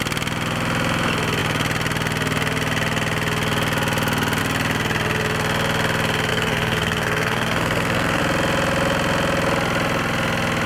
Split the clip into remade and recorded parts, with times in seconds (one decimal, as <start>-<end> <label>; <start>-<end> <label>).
0.0-6.3 recorded; 6.3-8.2 remade; 8.2-10.7 recorded